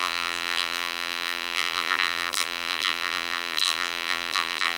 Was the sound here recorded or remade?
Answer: remade